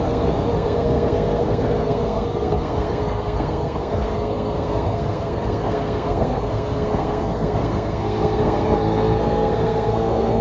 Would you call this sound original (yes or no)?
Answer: no